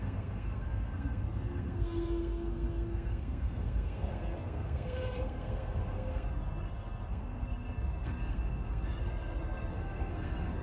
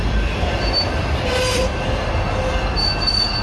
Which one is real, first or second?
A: second